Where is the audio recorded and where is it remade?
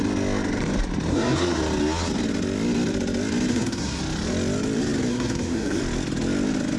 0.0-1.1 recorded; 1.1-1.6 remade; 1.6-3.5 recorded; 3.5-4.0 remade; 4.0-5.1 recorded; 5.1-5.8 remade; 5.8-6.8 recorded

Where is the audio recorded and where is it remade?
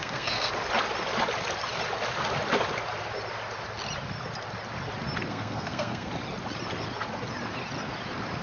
0.0-0.5 remade; 0.5-5.3 recorded; 5.3-6.1 remade; 6.1-8.4 recorded